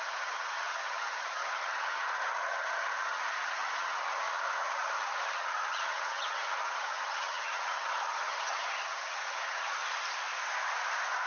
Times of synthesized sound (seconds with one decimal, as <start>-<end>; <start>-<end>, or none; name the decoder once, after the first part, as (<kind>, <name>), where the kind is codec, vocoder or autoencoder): 0.0-9.8 (vocoder, HiFi-GAN)